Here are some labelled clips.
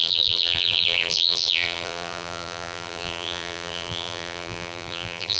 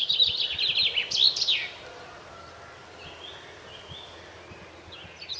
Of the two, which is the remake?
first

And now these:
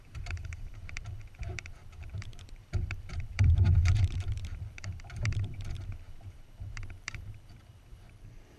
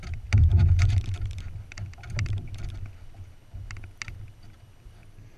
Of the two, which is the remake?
first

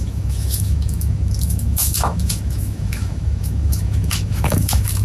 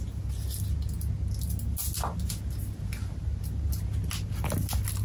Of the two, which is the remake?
first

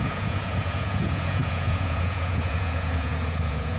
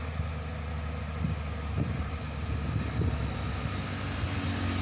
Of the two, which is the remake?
first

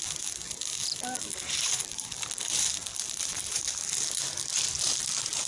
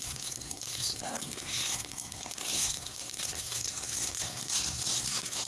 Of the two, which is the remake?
second